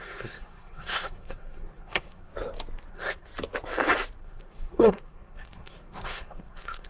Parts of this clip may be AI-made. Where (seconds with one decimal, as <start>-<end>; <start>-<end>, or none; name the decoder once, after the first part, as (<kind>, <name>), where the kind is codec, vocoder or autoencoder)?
0.0-2.3 (codec, SNAC); 2.9-3.3; 4.2-6.9